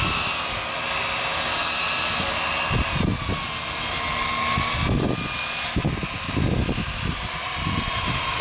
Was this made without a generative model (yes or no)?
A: yes